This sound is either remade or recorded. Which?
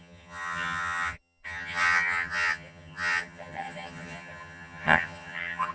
remade